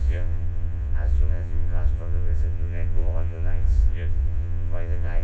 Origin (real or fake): fake